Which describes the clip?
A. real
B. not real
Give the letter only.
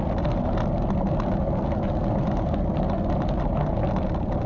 A